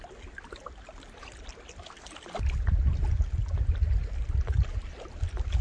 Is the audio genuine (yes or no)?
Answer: yes